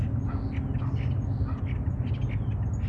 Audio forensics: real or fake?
real